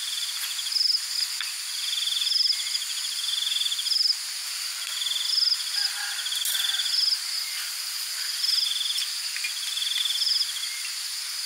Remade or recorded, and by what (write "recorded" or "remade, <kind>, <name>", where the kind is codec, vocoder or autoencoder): recorded